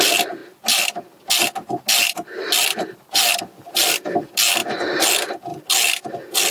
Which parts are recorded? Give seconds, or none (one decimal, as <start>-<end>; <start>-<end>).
0.0-6.5